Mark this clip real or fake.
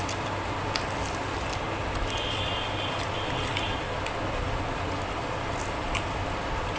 real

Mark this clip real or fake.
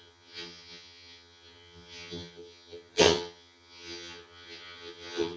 fake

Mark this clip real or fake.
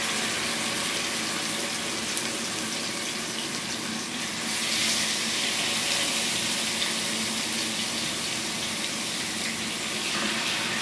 real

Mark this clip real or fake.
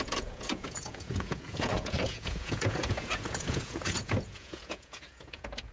fake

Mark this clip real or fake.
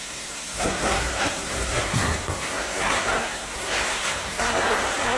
fake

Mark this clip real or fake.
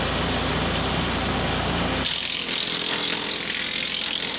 real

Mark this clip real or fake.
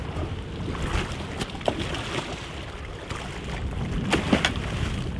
real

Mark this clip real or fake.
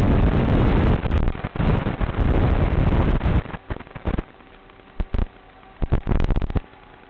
real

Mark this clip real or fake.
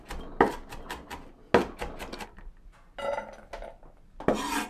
real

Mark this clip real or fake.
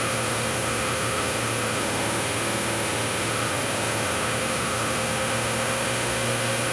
fake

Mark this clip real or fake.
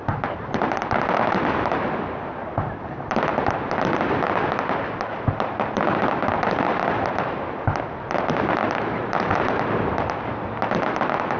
real